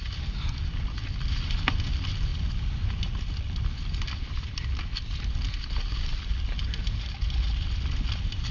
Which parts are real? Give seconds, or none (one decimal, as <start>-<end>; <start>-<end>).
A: 0.0-8.5